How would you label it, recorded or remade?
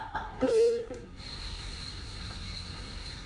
remade